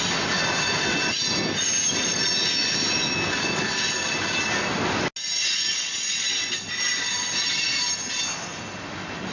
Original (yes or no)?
yes